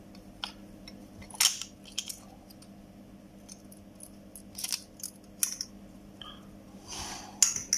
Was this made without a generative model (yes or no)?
yes